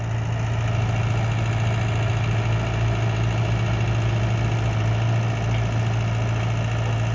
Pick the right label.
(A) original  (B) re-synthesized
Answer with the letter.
A